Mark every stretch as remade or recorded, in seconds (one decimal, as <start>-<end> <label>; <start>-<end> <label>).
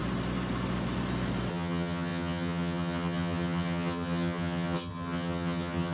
0.0-1.5 recorded; 1.5-5.9 remade